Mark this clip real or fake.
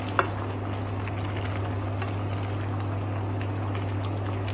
real